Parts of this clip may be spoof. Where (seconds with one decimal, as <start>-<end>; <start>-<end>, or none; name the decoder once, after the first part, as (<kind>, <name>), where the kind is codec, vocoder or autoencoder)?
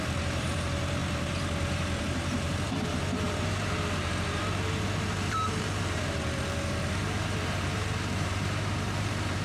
0.0-9.4 (vocoder, BigVGAN v2)